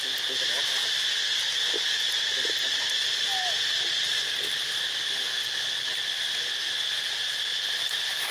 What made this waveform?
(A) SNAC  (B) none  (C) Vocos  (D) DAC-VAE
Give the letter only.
B